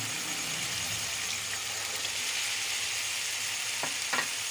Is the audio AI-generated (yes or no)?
no